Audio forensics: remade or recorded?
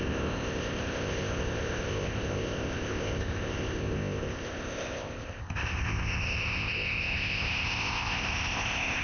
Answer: remade